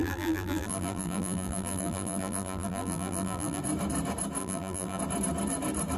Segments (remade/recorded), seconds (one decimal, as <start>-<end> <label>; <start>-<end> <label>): 0.0-3.6 remade; 3.6-4.4 recorded; 4.4-5.0 remade; 5.0-6.0 recorded